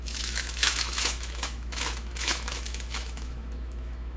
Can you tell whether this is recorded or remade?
remade